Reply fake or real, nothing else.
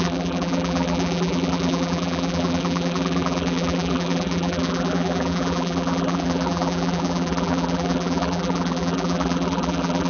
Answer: fake